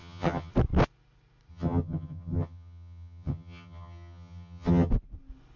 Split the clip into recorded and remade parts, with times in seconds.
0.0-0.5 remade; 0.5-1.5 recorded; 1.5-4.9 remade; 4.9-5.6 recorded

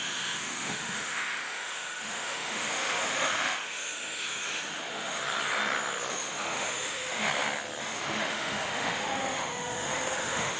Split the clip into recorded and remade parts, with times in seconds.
0.0-5.2 remade; 5.2-6.1 recorded; 6.1-7.3 remade; 7.3-7.8 recorded; 7.8-10.6 remade

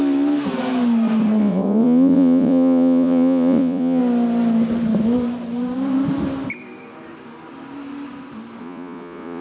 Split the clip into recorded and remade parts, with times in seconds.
0.0-1.4 recorded; 1.4-4.0 remade; 4.0-8.6 recorded; 8.6-9.4 remade

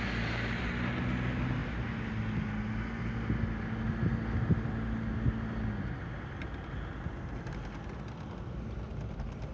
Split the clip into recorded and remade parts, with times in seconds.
0.0-9.5 recorded

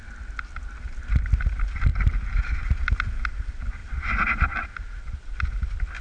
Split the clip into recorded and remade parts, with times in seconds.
0.0-6.0 recorded